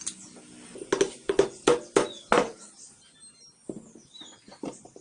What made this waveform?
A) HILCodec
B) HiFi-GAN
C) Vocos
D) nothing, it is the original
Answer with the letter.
D